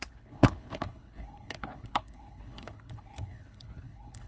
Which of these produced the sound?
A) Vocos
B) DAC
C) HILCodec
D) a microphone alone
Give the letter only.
C